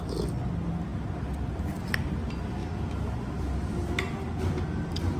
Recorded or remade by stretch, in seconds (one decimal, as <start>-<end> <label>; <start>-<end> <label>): 0.0-5.2 recorded